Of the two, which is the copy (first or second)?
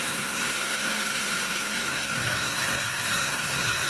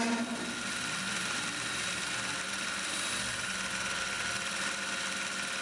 first